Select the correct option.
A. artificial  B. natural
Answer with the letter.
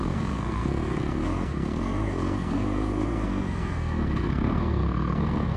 A